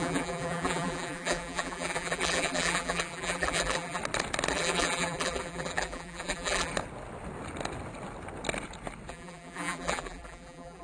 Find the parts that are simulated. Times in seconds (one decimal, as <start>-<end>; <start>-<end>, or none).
0.0-4.0; 4.5-6.7; 9.1-10.8